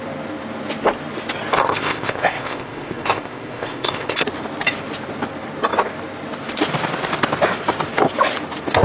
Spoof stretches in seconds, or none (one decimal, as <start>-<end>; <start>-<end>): 1.6-4.2